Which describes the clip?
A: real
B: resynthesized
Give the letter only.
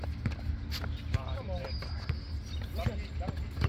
A